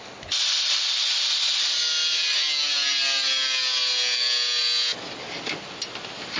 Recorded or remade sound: recorded